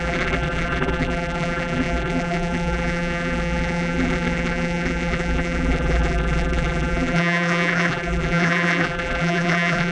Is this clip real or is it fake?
fake